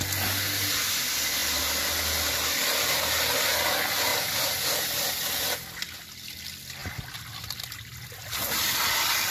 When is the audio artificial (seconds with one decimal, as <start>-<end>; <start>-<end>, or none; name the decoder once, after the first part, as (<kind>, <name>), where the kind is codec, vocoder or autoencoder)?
4.1-4.6 (vocoder, BigVGAN v2)